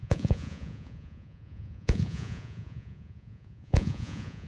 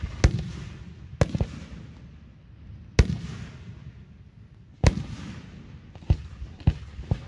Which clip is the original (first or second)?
second